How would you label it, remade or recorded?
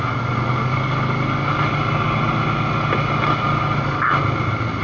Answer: recorded